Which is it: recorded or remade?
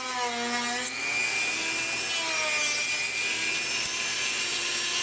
recorded